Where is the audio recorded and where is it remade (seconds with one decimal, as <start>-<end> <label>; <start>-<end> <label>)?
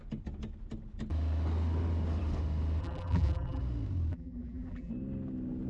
0.0-2.8 recorded; 2.8-3.6 remade; 3.6-4.1 recorded; 4.1-4.9 remade; 4.9-5.7 recorded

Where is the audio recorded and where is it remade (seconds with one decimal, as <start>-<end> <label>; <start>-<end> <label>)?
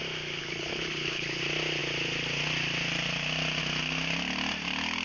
0.0-0.4 recorded; 0.4-1.4 remade; 1.4-5.0 recorded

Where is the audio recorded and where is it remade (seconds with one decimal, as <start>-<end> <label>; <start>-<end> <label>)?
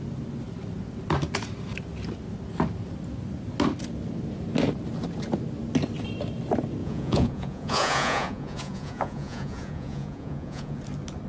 0.0-6.8 recorded; 6.8-10.8 remade; 10.8-11.3 recorded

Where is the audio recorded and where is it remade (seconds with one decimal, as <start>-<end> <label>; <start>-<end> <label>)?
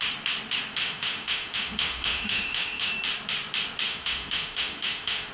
0.0-0.8 recorded; 0.8-2.9 remade; 2.9-3.9 recorded; 3.9-5.3 remade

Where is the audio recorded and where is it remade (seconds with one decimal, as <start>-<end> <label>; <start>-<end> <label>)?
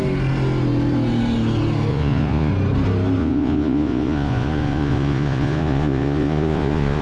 0.0-1.9 recorded; 1.9-2.5 remade; 2.5-3.2 recorded; 3.2-7.0 remade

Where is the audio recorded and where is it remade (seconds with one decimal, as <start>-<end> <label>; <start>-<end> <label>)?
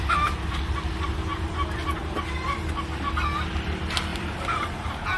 0.0-4.1 recorded; 4.1-4.6 remade; 4.6-5.2 recorded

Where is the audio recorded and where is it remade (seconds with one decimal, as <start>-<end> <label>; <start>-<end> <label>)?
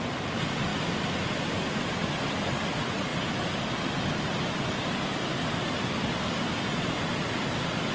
0.0-7.9 recorded